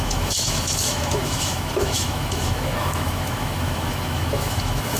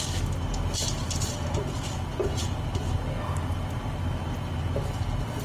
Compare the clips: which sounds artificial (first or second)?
first